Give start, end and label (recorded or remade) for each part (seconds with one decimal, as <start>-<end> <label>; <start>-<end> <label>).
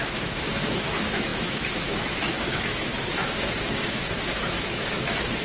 0.0-5.4 remade